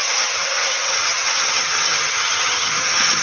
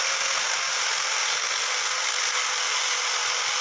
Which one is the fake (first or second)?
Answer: first